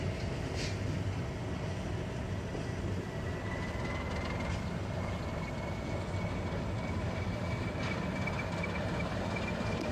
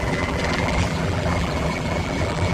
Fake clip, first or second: second